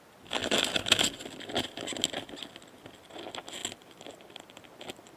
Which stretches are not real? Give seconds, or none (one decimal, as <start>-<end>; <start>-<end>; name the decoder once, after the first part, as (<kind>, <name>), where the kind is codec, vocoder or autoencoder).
none